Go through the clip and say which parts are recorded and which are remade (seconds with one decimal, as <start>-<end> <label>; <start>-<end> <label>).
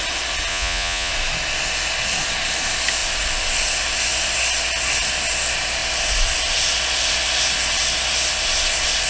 0.0-0.5 recorded; 0.5-1.1 remade; 1.1-9.1 recorded